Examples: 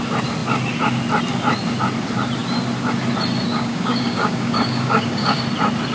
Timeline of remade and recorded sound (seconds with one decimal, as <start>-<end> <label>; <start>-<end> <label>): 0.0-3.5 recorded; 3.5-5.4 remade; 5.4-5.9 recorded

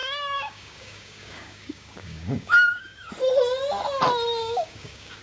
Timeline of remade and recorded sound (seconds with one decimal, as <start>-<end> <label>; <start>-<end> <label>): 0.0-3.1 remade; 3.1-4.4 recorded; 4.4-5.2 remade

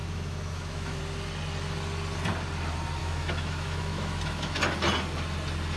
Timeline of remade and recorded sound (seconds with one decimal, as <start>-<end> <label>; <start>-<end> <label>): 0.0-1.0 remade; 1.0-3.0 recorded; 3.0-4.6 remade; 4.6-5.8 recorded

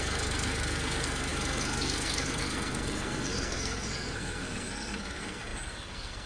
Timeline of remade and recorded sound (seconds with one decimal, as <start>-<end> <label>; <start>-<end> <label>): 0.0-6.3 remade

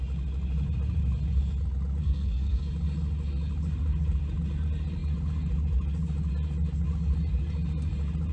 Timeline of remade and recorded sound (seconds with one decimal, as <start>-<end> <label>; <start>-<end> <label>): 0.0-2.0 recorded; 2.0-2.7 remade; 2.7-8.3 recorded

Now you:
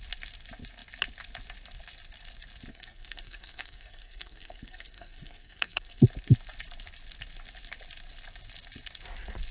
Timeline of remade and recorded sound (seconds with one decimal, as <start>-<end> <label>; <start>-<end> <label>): 0.0-2.7 recorded; 2.7-6.0 remade; 6.0-9.5 recorded

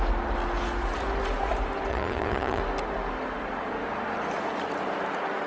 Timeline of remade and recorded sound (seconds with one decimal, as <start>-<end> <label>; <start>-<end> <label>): 0.0-1.9 recorded; 1.9-2.6 remade; 2.6-5.5 recorded

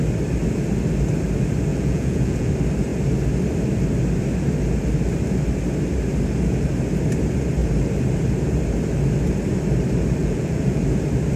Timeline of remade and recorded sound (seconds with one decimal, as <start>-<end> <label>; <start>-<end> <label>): 0.0-1.7 recorded; 1.7-2.5 remade; 2.5-10.2 recorded; 10.2-10.8 remade; 10.8-11.4 recorded